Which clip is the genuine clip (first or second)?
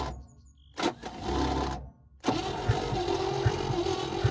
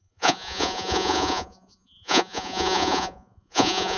first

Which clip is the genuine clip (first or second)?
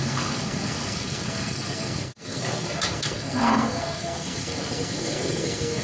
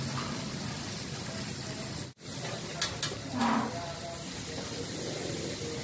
second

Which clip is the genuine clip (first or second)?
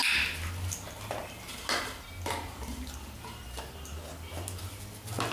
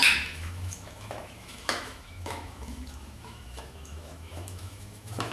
first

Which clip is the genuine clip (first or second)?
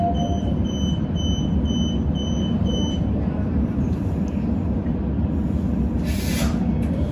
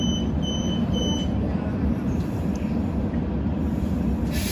first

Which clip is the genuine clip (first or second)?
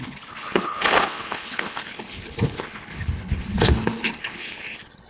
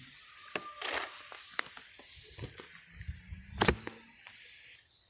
second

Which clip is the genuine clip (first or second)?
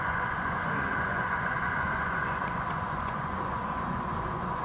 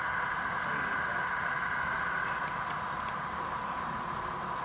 second